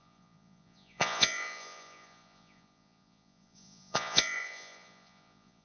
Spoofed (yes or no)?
yes